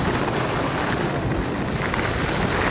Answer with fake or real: real